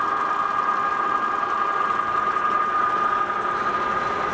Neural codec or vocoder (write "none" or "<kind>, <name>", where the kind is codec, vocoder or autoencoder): none